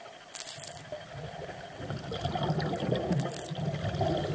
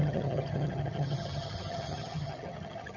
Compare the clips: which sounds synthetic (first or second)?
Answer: second